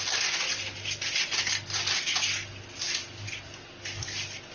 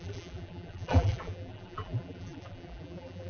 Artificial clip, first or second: second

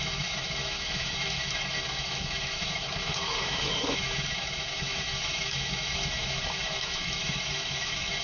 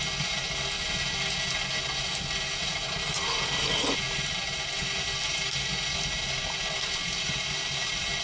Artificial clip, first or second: first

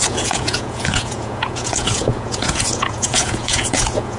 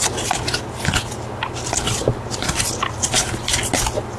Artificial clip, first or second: first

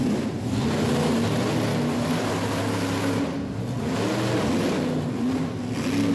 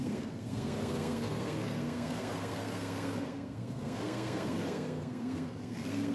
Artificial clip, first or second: second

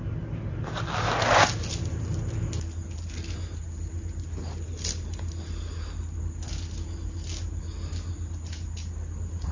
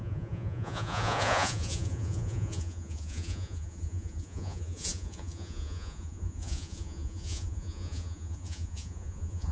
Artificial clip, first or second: second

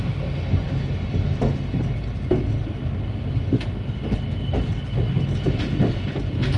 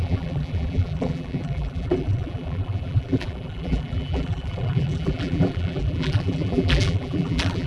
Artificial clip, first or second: second